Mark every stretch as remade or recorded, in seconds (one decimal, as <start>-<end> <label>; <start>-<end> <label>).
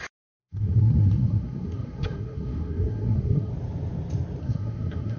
0.0-0.4 recorded; 0.4-3.5 remade; 3.5-4.4 recorded; 4.4-5.2 remade